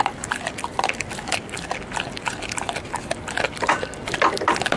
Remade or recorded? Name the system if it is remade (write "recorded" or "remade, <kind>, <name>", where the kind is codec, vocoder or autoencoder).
recorded